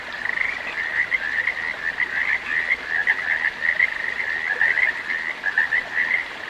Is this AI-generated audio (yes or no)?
no